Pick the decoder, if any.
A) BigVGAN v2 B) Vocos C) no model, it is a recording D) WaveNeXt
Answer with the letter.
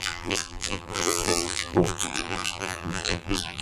A